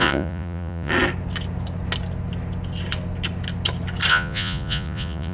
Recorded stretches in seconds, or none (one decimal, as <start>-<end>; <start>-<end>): 0.9-4.1